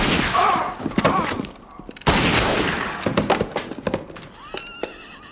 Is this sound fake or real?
real